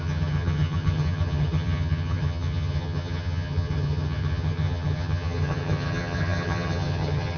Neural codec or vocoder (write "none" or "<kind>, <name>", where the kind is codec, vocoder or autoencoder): vocoder, HiFi-GAN